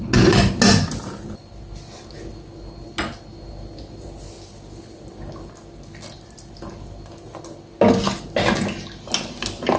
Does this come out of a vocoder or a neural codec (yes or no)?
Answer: no